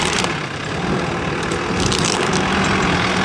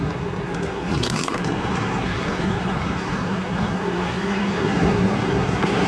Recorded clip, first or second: first